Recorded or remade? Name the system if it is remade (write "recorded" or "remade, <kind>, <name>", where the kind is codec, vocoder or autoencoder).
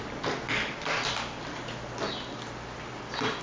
recorded